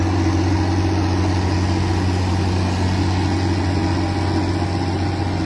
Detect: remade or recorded recorded